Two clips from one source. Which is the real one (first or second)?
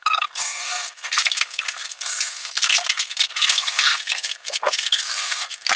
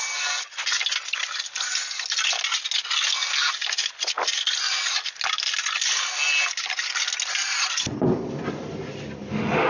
second